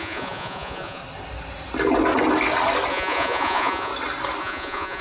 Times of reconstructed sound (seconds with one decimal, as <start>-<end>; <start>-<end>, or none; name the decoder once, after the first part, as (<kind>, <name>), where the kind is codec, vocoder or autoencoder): 0.0-1.0 (vocoder, Vocos); 2.9-3.9; 4.4-5.0